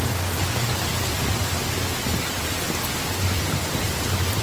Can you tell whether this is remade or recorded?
recorded